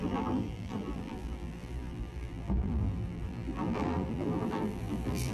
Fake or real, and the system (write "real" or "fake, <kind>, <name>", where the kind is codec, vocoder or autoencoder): fake, vocoder, BigVGAN v2